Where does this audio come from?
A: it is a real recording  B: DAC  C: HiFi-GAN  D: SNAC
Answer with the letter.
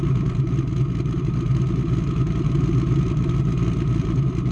A